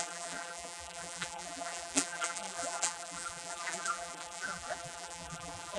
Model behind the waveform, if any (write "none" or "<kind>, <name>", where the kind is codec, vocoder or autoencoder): vocoder, BigVGAN v2